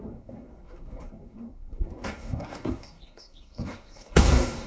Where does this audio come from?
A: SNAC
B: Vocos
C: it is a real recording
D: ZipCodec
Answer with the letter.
A